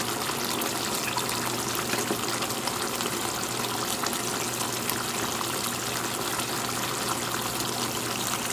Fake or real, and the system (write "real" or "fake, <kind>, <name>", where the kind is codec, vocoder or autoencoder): real